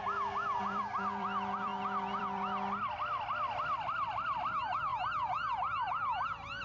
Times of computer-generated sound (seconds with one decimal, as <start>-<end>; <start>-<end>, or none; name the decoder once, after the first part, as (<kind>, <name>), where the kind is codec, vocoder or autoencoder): 0.0-4.9 (vocoder, BigVGAN v2)